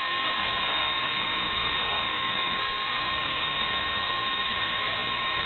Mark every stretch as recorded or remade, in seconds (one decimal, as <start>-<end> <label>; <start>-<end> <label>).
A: 0.0-5.5 remade